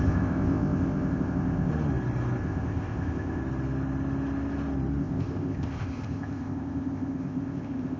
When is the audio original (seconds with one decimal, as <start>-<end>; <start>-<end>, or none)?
1.7-2.4; 3.4-5.0